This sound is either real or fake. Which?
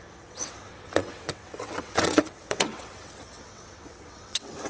fake